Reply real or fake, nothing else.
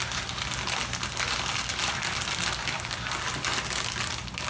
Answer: real